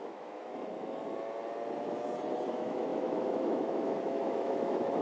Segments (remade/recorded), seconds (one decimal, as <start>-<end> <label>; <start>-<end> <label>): 0.0-0.5 remade; 0.5-2.5 recorded; 2.5-5.0 remade